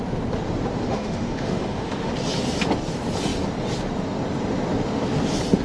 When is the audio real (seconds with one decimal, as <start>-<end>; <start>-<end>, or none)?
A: 0.0-0.9; 2.1-5.6